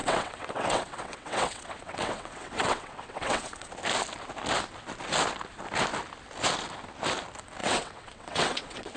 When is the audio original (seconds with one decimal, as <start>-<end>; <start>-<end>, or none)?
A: 3.7-7.6